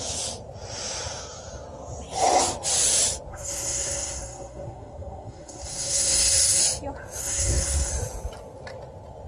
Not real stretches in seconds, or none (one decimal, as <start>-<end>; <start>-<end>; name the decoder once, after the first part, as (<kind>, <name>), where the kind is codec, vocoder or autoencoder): 3.3-6.6 (codec, SNAC); 7.2-7.9